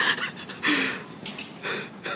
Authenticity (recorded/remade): recorded